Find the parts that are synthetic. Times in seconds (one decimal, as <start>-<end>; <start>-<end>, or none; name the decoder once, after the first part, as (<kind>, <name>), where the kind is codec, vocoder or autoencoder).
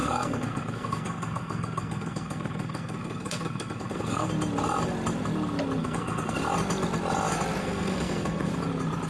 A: 0.0-4.3 (codec, SNAC); 5.8-6.4; 7.6-8.5